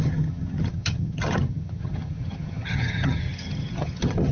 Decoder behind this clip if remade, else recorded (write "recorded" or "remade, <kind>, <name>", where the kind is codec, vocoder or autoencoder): remade, vocoder, HiFi-GAN